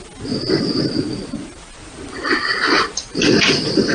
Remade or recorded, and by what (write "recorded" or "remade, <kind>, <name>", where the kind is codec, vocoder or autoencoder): recorded